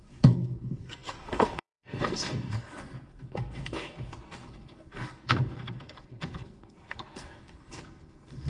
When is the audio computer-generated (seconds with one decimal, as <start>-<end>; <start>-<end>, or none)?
0.0-8.5